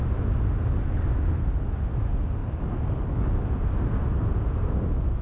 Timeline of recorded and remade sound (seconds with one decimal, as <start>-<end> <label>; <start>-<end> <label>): 0.0-2.4 recorded; 2.4-3.3 remade; 3.3-5.2 recorded